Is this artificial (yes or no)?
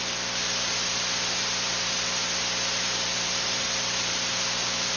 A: no